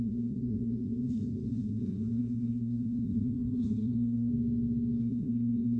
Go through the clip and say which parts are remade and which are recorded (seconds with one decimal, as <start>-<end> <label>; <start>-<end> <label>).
0.0-4.3 remade; 4.3-5.0 recorded; 5.0-5.8 remade